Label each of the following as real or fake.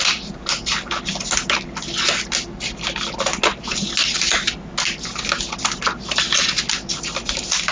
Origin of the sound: real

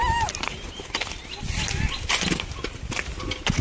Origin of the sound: real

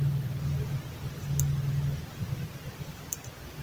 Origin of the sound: real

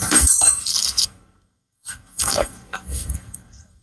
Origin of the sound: fake